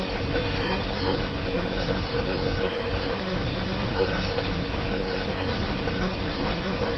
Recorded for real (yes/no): no